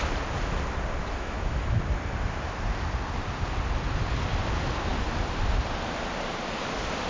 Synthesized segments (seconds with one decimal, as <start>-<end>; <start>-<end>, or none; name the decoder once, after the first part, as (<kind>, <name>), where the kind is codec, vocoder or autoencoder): 1.0-1.8 (autoencoder, DAC-VAE)